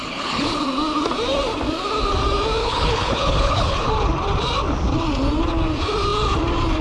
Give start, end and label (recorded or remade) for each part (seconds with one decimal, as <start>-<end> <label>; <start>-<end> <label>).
0.0-0.6 remade; 0.6-2.6 recorded; 2.6-3.9 remade; 3.9-6.8 recorded